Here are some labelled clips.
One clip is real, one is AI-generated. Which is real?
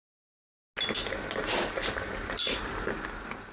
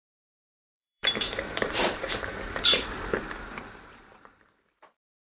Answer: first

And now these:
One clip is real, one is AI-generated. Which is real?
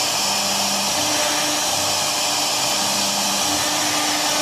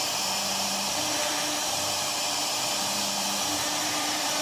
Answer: first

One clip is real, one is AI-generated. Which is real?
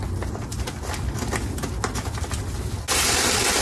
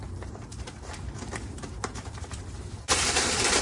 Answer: first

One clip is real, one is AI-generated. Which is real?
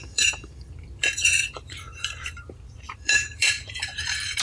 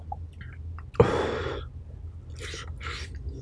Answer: second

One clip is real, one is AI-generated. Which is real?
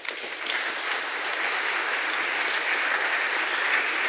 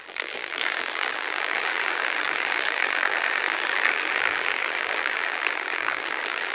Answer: first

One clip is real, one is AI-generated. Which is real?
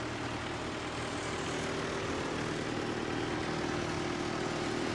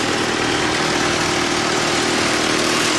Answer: first